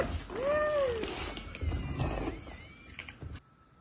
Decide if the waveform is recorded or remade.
recorded